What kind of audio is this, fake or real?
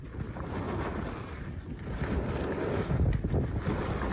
real